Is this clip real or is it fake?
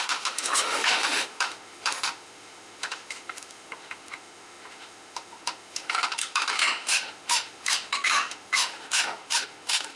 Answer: fake